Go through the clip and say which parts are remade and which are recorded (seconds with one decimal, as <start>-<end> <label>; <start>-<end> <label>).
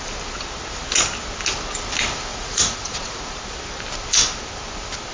0.0-2.3 recorded; 2.3-3.4 remade; 3.4-5.1 recorded